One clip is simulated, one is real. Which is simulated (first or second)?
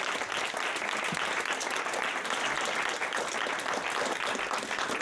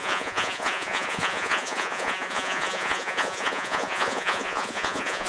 second